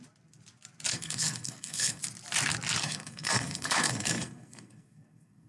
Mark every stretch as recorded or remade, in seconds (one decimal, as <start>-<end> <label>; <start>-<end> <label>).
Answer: 0.0-0.9 recorded; 0.9-2.0 remade; 2.0-2.8 recorded; 2.8-5.5 remade